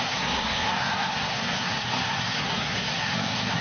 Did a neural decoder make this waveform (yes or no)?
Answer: yes